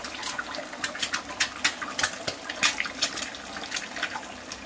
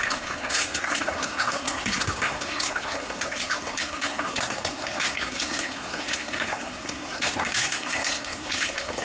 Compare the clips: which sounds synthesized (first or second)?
second